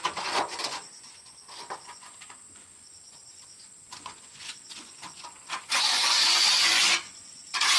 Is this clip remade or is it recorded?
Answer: remade